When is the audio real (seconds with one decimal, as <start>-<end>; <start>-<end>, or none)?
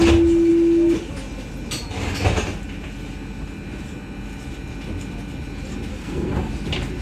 0.0-5.9; 6.5-7.0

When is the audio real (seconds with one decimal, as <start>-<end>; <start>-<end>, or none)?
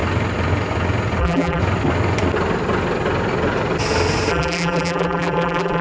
0.0-1.2; 1.6-4.3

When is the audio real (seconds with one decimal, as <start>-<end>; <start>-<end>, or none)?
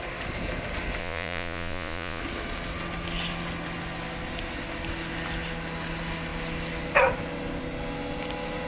0.0-1.0; 2.2-8.7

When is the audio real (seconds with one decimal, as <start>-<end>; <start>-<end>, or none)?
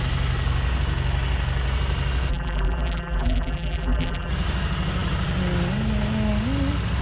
0.0-2.3; 4.3-7.0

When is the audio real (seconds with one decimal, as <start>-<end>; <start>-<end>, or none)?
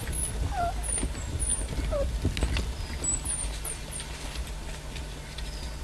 0.0-5.8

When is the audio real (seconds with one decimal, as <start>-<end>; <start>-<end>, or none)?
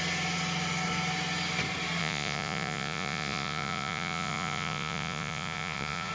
0.0-2.0